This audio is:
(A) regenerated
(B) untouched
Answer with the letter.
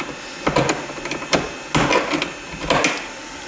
B